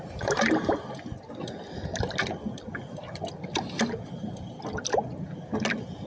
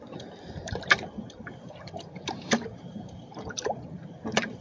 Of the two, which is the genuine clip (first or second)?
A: first